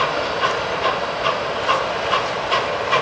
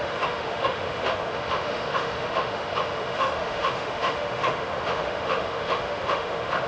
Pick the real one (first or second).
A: first